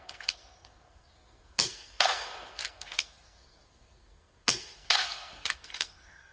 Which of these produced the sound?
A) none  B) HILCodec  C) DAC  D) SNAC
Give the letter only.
D